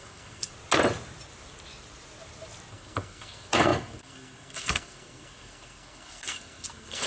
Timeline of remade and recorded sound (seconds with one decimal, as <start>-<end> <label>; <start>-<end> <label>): 0.0-0.5 remade; 0.5-2.7 recorded; 2.7-7.1 remade